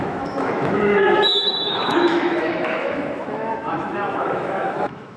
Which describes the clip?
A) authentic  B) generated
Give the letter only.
B